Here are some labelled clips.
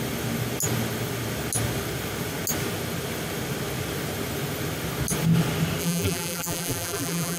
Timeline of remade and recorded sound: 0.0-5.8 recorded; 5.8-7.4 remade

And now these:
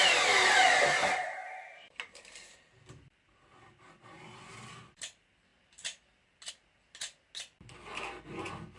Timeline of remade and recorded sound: 0.0-8.8 recorded

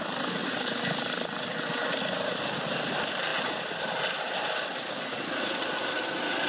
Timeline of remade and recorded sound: 0.0-6.5 recorded

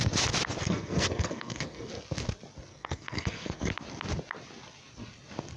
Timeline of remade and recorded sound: 0.0-0.6 recorded; 0.6-1.9 remade; 1.9-2.7 recorded; 2.7-3.7 remade; 3.7-5.6 recorded

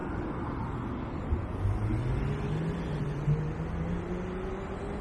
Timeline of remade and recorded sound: 0.0-5.0 recorded

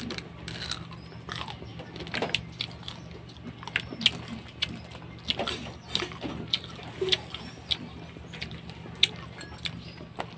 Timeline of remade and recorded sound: 0.0-10.4 recorded